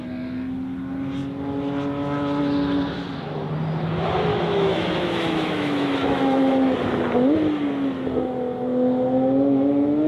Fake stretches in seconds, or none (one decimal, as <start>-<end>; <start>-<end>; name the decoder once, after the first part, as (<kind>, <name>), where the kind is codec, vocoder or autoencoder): 4.3-6.4 (autoencoder, DAC-VAE)